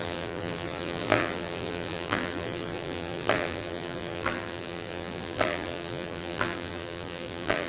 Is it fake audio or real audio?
fake